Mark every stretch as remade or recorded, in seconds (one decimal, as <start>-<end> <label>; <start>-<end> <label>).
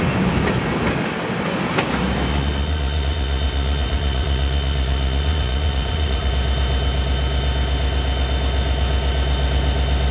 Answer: 0.0-2.3 recorded; 2.3-6.3 remade; 6.3-10.1 recorded